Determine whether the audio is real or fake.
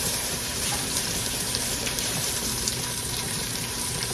fake